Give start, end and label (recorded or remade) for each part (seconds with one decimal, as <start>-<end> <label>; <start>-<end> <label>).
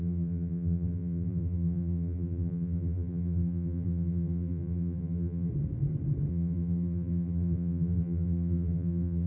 0.0-5.5 remade; 5.5-6.3 recorded; 6.3-9.3 remade